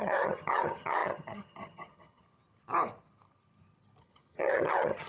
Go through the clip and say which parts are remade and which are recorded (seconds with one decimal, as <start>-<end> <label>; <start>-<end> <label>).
0.0-2.2 remade; 2.2-4.0 recorded; 4.0-5.1 remade